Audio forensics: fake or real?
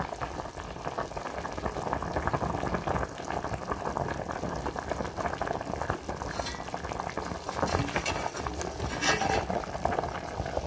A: real